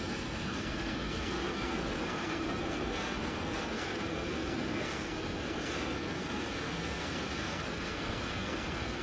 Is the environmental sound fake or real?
fake